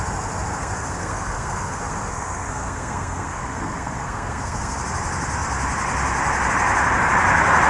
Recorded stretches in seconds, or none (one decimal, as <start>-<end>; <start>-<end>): 0.0-0.6; 4.8-7.7